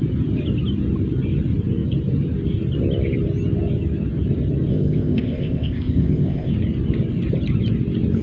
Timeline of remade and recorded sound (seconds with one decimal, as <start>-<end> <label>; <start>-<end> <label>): 0.0-4.7 recorded; 4.7-6.5 remade; 6.5-8.2 recorded